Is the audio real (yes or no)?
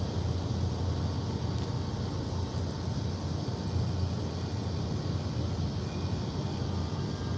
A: yes